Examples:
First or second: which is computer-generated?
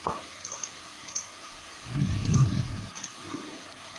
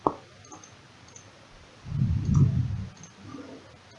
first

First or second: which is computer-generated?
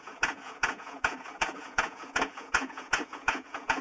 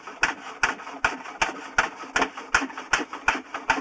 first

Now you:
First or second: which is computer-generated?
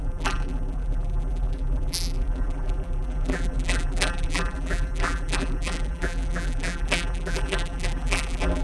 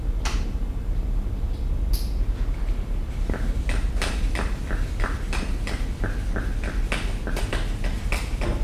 first